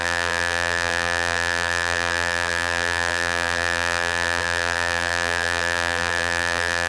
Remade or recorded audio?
remade